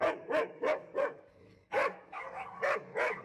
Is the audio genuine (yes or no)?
no